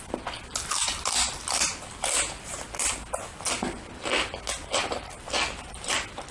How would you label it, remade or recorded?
recorded